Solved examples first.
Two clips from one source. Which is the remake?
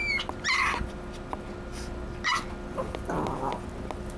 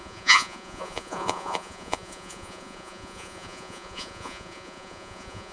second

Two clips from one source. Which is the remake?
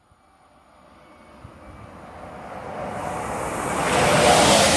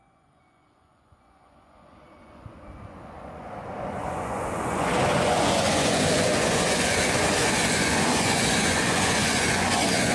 second